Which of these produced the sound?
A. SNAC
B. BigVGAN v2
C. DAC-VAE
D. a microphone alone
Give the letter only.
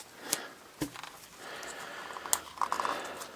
D